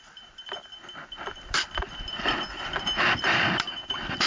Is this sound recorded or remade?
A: recorded